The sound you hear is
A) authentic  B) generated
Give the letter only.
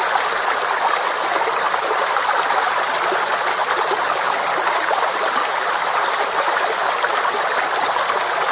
A